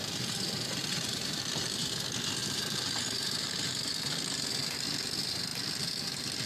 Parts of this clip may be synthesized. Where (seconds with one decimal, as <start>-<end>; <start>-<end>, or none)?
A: 0.0-1.9; 2.4-3.9